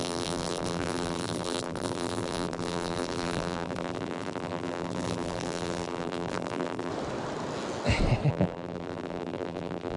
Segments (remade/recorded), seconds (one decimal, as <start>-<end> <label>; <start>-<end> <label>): 0.0-6.9 remade; 6.9-8.3 recorded; 8.3-10.0 remade